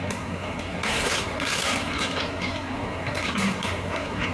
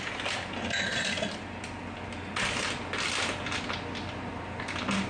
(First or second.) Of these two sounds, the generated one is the first